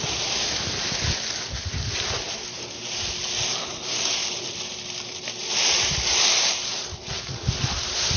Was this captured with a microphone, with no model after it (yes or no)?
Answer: yes